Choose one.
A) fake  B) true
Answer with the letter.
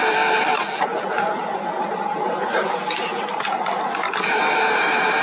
B